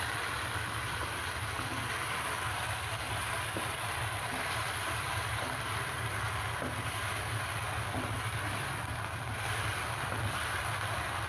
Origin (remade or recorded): remade